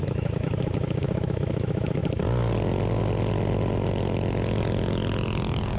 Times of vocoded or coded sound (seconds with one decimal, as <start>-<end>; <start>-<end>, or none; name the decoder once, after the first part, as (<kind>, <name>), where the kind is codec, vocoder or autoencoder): 0.0-2.0 (autoencoder, DAC-VAE)